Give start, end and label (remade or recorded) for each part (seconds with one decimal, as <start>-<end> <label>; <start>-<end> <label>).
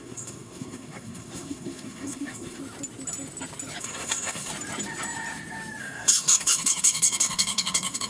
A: 0.0-2.6 remade; 2.6-3.8 recorded; 3.8-4.5 remade; 4.5-5.8 recorded; 5.8-8.1 remade